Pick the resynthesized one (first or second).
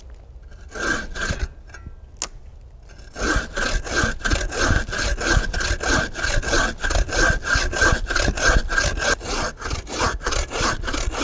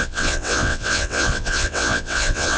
second